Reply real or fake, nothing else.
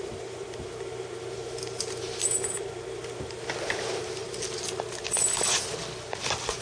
real